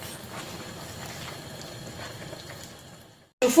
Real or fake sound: real